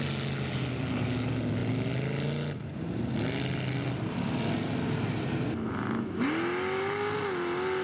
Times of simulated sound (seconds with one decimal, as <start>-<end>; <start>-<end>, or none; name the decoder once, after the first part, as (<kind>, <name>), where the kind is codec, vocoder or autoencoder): none

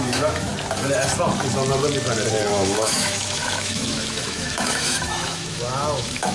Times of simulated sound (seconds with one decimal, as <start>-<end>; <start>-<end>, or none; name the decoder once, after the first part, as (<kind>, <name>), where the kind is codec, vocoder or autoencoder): 0.0-0.5 (autoencoder, DAC-VAE); 2.5-6.3

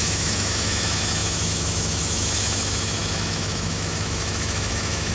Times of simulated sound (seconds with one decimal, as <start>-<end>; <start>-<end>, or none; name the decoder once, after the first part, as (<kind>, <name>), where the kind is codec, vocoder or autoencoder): 0.0-5.1 (autoencoder, DAC-VAE)

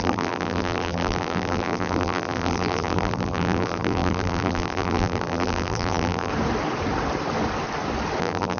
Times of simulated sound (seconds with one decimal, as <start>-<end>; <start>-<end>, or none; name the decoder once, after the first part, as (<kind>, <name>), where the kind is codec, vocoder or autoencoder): 0.0-6.3 (vocoder, BigVGAN v2); 8.2-8.6

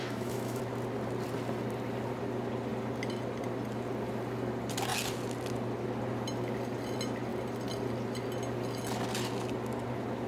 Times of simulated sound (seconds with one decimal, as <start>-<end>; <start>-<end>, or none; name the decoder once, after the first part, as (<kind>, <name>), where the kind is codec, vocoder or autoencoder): 0.0-0.6 (autoencoder, DAC-VAE)